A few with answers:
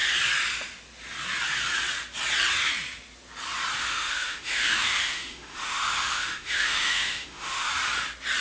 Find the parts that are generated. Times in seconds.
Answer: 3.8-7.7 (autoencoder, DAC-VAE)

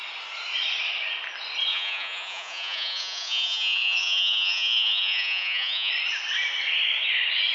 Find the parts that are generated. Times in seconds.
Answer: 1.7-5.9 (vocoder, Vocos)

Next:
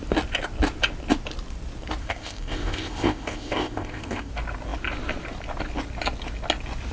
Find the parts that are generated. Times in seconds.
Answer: 2.0-4.3 (codec, ZipCodec)

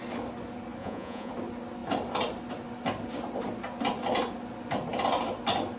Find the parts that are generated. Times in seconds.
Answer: 0.8-1.3 (vocoder, Vocos)